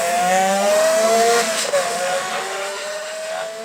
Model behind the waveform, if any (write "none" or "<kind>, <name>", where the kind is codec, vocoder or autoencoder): autoencoder, DAC-VAE